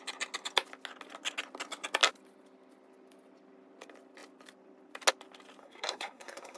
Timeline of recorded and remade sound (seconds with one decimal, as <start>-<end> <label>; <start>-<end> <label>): 0.0-5.6 recorded; 5.6-6.6 remade